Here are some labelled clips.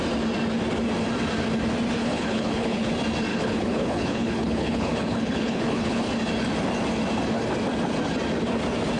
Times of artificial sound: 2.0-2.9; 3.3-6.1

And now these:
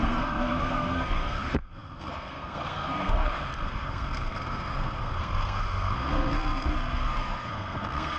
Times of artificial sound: 0.0-8.2

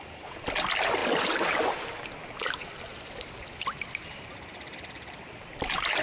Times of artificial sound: none

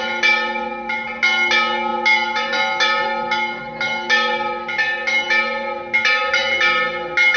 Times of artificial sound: none

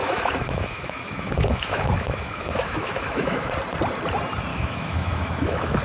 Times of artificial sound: 0.0-3.5; 4.5-5.8